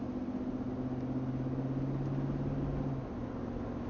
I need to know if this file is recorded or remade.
recorded